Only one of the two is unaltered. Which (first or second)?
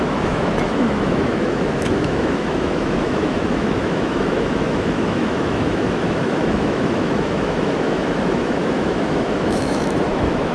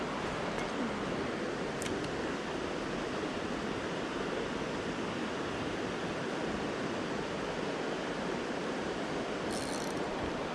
second